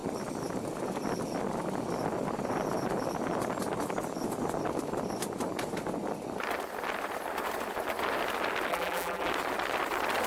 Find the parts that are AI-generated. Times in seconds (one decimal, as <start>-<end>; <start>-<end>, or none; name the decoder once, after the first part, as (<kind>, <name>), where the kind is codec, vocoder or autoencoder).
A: 8.7-9.3 (vocoder, BigVGAN v2)